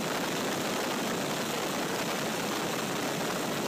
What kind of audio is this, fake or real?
real